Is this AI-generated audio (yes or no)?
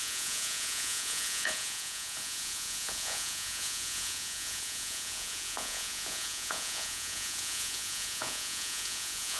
yes